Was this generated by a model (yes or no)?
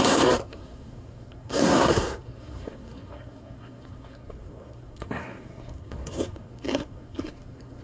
yes